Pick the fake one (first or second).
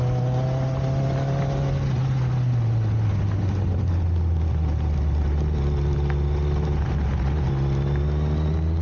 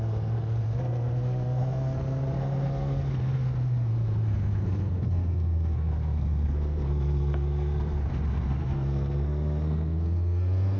second